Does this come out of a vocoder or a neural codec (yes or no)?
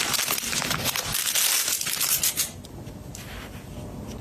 no